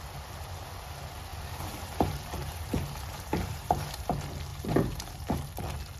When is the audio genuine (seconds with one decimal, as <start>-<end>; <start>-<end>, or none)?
0.0-1.3; 4.1-4.5; 5.5-6.0